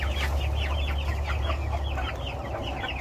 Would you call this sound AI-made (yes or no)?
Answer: no